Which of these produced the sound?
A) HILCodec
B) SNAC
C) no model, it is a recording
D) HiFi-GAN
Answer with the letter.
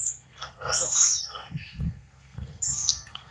B